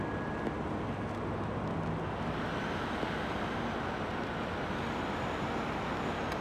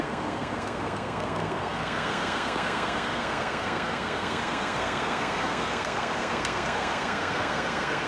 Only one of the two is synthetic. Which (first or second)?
second